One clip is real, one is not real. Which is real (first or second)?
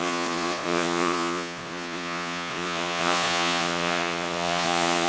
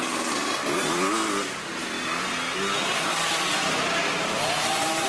second